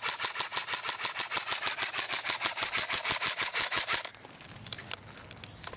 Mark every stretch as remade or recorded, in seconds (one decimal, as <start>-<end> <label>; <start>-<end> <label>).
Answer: 0.0-5.8 recorded